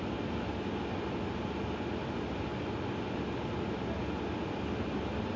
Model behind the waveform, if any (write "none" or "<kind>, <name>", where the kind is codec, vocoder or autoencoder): none